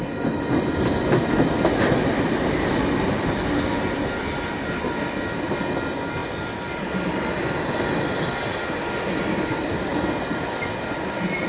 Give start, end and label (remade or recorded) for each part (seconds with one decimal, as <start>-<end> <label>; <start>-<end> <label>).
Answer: 0.0-11.5 recorded